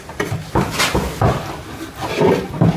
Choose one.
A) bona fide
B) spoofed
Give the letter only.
A